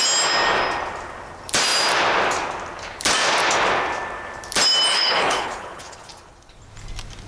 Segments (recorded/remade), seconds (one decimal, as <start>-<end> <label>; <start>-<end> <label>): 0.0-4.9 recorded; 4.9-6.6 remade; 6.6-7.3 recorded